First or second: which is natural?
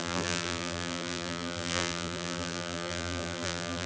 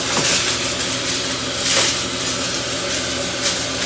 second